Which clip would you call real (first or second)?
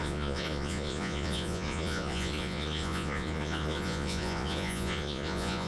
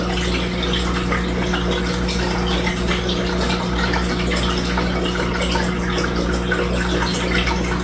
second